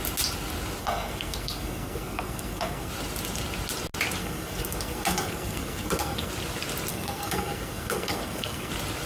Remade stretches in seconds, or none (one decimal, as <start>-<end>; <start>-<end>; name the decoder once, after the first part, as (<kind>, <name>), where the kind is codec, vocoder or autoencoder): 0.8-2.9 (codec, SNAC); 4.2-6.3; 6.9-8.7